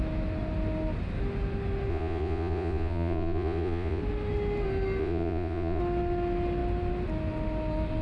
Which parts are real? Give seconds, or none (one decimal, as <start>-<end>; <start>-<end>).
0.0-1.9; 4.0-5.0; 5.8-8.0